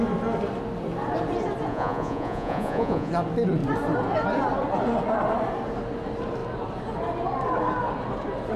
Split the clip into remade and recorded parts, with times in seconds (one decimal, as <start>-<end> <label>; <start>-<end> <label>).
0.0-1.7 recorded; 1.7-3.1 remade; 3.1-8.6 recorded